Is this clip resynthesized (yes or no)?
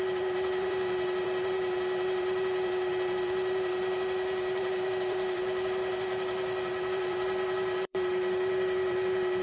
yes